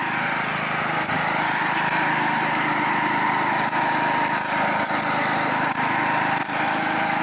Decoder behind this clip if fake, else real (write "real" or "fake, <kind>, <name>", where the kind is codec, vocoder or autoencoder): real